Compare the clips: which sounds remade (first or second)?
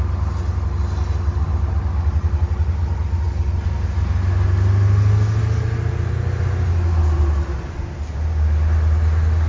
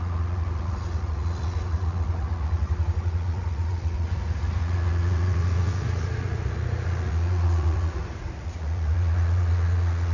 second